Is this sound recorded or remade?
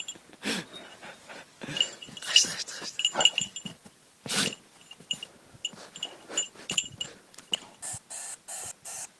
recorded